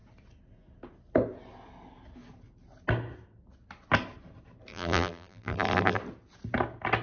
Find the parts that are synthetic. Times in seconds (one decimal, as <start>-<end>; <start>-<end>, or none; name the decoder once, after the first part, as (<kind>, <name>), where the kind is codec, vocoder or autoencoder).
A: 4.7-6.0 (vocoder, BigVGAN v2)

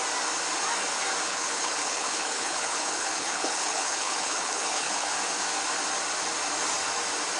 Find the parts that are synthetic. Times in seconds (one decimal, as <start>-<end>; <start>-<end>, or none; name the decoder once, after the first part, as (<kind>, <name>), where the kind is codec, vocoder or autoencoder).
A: 1.3-5.1 (codec, HILCodec)